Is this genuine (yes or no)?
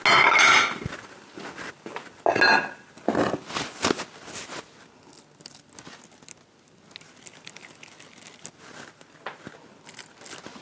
yes